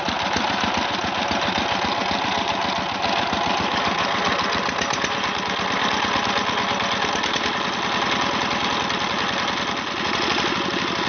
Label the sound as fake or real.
real